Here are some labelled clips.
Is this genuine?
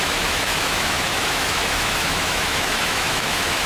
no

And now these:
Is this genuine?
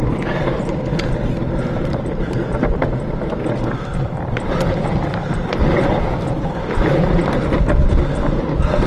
no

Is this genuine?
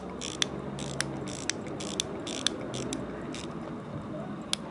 yes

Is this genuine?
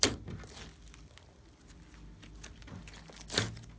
yes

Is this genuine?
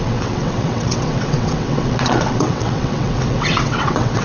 no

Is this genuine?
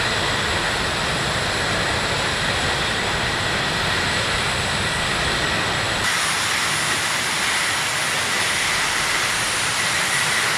yes